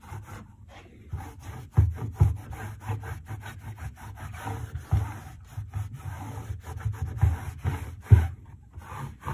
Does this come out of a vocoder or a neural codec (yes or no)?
no